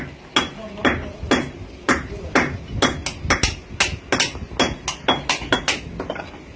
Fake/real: real